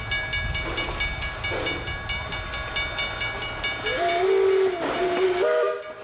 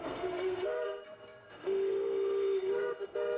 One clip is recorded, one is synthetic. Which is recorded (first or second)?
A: first